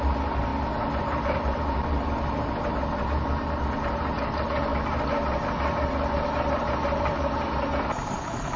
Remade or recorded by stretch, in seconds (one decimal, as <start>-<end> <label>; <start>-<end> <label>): 0.0-0.5 remade; 0.5-1.0 recorded; 1.0-8.6 remade

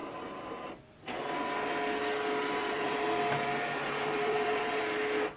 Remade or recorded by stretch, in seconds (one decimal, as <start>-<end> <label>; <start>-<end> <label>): 0.0-0.8 remade; 0.8-2.6 recorded; 2.6-4.8 remade; 4.8-5.4 recorded

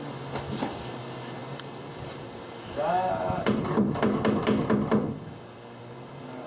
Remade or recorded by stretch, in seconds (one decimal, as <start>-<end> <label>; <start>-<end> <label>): 0.0-1.4 recorded; 1.4-4.7 remade; 4.7-6.5 recorded

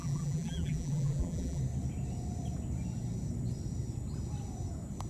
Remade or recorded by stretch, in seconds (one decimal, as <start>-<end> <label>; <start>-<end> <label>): 0.0-1.6 remade; 1.6-5.1 recorded

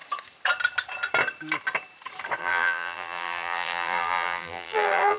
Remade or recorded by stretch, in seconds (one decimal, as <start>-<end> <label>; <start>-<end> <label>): 0.0-2.4 recorded; 2.4-5.2 remade

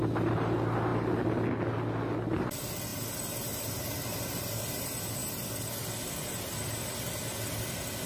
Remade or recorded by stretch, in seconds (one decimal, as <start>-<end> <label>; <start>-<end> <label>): 0.0-8.1 recorded